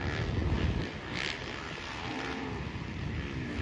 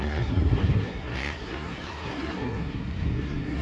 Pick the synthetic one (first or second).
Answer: second